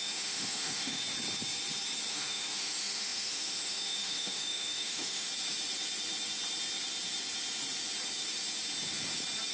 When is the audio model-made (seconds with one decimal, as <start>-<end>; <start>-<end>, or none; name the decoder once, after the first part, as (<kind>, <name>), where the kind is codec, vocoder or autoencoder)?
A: 0.0-1.0 (autoencoder, DAC-VAE); 2.1-5.3

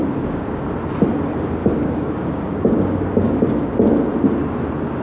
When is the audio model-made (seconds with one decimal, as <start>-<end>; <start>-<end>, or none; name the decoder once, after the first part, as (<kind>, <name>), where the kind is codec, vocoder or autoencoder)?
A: 0.0-0.6 (codec, DAC); 1.6-3.7

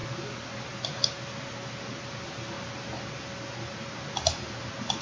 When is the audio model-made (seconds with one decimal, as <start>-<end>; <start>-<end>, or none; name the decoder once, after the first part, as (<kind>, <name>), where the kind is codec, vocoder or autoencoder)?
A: none